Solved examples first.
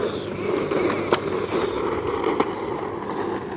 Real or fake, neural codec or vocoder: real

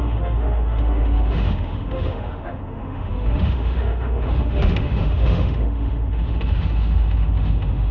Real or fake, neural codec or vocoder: fake, autoencoder, DAC-VAE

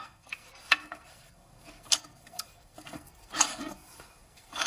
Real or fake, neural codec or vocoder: fake, codec, SNAC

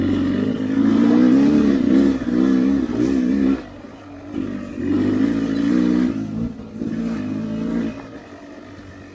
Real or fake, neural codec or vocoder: real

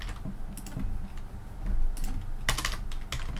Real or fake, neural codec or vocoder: real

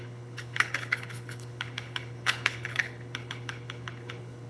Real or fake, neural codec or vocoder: fake, codec, HILCodec